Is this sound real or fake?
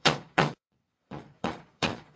fake